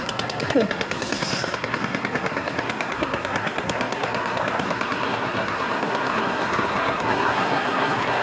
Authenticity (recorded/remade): remade